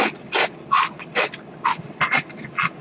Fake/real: real